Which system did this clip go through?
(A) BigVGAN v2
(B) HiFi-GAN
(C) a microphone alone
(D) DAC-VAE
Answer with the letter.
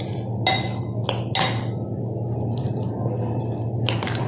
C